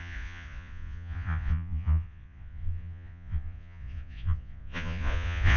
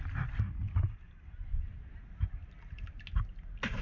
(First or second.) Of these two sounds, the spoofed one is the first